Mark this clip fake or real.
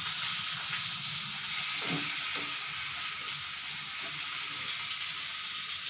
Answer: real